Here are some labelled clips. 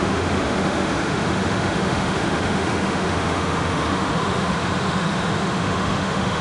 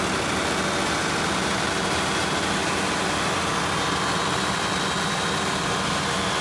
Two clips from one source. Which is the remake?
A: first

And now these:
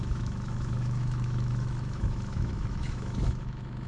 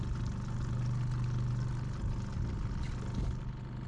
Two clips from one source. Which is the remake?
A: first